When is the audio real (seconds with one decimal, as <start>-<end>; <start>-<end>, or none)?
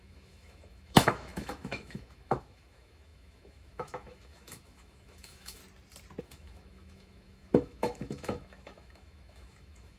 5.6-6.2